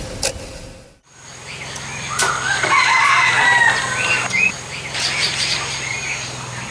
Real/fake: real